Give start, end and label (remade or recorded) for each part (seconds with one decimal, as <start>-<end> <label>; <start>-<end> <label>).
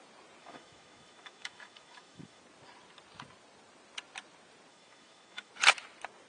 0.0-0.4 recorded; 0.4-2.4 remade; 2.4-4.7 recorded; 4.7-5.5 remade; 5.5-6.3 recorded